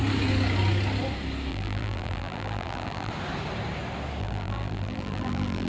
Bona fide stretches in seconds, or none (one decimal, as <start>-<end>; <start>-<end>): 0.0-1.5; 3.1-4.2